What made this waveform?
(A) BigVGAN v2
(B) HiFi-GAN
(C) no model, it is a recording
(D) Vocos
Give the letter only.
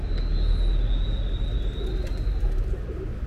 C